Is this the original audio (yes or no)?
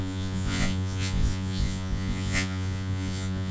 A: no